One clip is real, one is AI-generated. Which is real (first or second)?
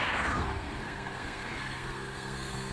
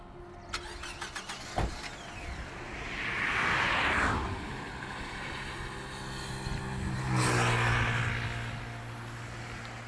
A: second